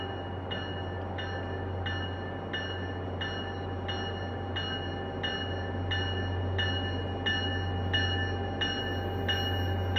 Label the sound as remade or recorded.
recorded